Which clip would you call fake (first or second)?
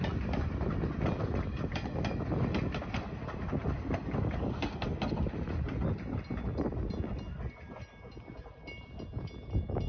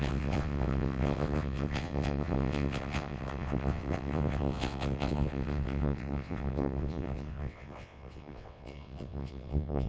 second